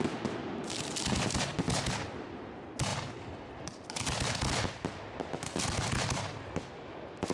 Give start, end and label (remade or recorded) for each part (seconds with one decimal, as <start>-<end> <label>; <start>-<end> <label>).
0.0-7.3 recorded